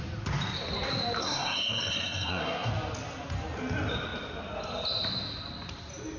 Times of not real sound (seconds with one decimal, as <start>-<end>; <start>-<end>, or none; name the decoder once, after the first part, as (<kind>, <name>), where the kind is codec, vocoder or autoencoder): 1.2-2.7 (codec, SNAC)